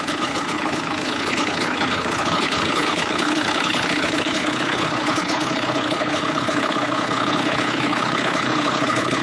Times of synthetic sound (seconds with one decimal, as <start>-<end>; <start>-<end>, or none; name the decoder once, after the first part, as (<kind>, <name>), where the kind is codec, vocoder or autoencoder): 0.0-9.2 (codec, HILCodec)